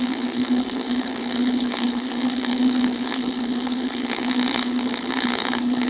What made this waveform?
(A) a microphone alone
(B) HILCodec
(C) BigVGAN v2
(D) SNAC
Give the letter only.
B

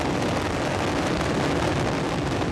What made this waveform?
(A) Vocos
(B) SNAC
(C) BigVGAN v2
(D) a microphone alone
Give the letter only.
D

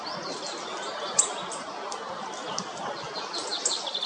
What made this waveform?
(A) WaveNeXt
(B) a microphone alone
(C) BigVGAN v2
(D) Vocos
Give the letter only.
B